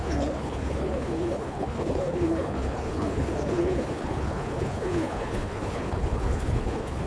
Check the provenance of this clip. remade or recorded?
remade